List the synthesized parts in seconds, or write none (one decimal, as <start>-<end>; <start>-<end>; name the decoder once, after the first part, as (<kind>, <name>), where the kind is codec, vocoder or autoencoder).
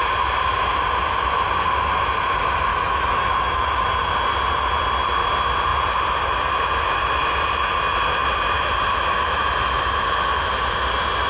2.7-3.9 (autoencoder, DAC-VAE)